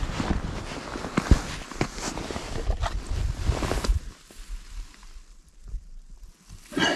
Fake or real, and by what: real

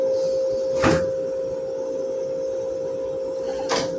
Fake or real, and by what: real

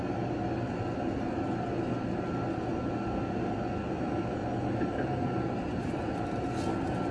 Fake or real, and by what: real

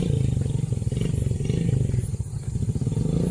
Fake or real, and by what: real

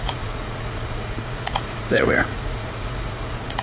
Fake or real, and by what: fake, vocoder, Vocos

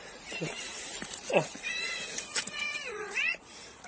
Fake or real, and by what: fake, vocoder, Vocos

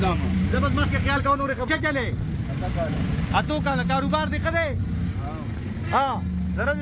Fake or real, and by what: real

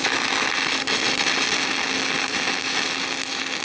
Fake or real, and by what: real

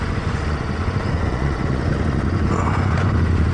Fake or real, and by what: fake, vocoder, Vocos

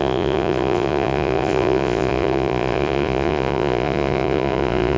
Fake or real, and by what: fake, vocoder, Vocos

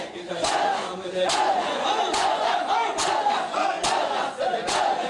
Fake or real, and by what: fake, vocoder, Vocos